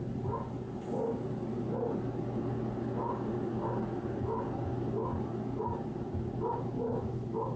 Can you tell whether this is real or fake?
real